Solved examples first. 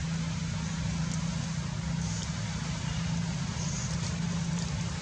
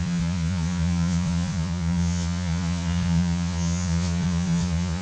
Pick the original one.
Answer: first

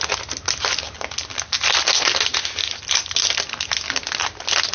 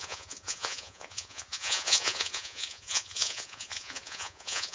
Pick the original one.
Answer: first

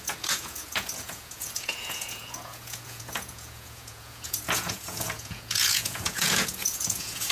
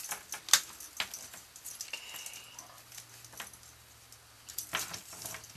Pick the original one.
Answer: second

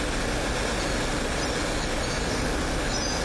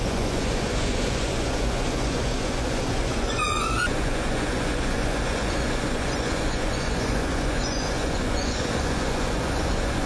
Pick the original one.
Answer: first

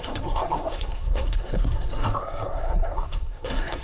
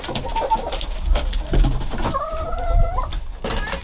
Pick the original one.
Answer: second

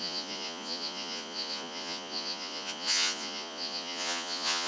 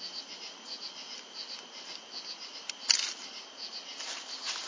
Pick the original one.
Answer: second